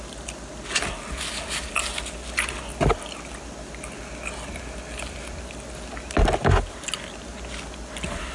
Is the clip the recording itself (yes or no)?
yes